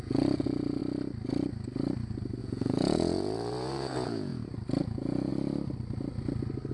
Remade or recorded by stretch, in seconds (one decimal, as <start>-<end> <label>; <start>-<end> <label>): 0.0-0.8 remade; 0.8-2.4 recorded; 2.4-4.3 remade; 4.3-4.8 recorded; 4.8-5.3 remade; 5.3-6.7 recorded